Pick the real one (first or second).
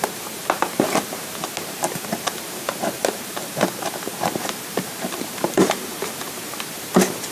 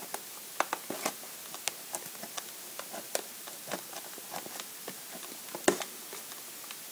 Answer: second